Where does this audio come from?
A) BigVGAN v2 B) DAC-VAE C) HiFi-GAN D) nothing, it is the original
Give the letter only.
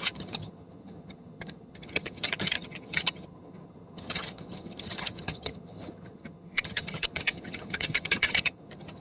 C